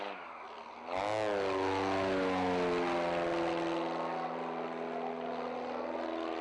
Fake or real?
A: real